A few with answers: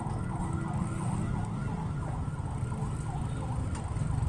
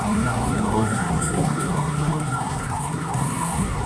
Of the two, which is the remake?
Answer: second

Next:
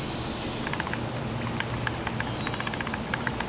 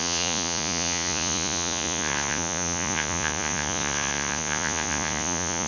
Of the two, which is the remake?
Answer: second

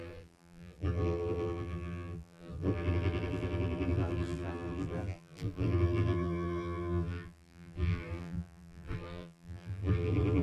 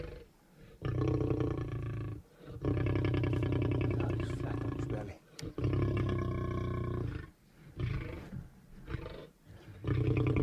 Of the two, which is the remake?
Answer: first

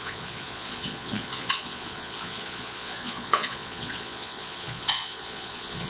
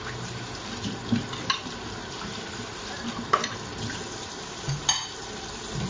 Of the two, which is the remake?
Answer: first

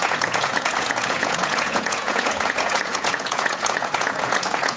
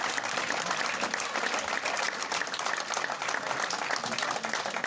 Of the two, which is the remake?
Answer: first